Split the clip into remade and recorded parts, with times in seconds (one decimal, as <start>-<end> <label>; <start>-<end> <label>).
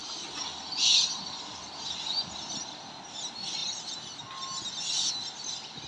0.0-5.9 recorded